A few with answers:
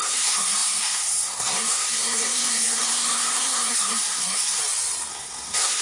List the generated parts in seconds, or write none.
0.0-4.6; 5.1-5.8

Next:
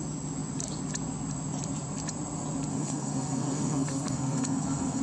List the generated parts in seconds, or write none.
2.7-5.0